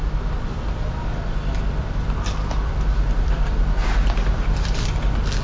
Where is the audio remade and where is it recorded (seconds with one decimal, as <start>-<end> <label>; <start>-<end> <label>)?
0.0-0.5 recorded; 0.5-1.0 remade; 1.0-1.8 recorded; 1.8-5.0 remade; 5.0-5.4 recorded